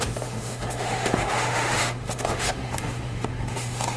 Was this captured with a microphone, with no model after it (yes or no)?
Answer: no